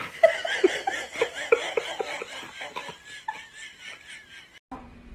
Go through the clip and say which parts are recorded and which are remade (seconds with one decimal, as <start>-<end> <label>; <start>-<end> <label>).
0.0-5.1 recorded